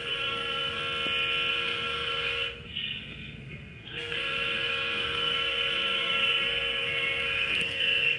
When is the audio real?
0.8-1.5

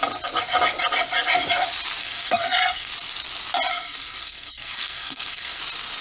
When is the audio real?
0.0-2.0; 2.9-3.7; 5.6-6.0